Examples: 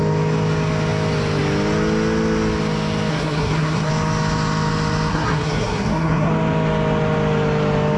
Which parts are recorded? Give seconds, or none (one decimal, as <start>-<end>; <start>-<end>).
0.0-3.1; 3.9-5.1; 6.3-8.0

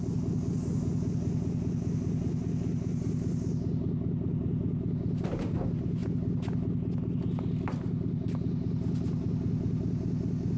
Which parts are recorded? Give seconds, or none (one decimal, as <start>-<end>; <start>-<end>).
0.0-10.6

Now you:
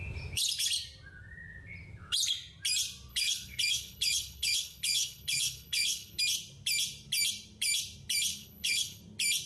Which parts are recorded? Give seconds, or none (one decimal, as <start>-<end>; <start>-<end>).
0.0-3.1; 6.2-8.3; 9.0-9.5

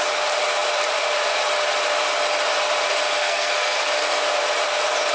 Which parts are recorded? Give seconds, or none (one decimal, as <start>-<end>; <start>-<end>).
0.0-3.2; 3.8-5.1